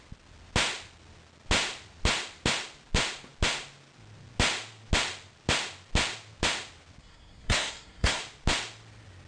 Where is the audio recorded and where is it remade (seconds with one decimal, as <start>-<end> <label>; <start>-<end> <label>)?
0.0-7.0 recorded; 7.0-8.2 remade; 8.2-9.3 recorded